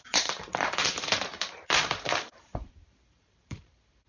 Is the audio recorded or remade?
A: remade